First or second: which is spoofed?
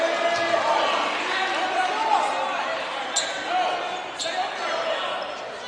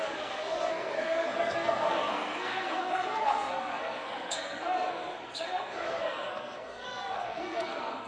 second